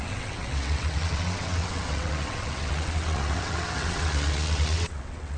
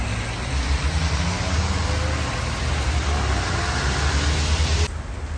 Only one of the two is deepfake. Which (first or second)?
first